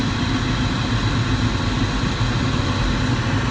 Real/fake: real